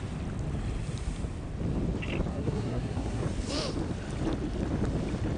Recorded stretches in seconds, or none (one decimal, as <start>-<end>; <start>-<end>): 0.0-2.3; 3.2-5.4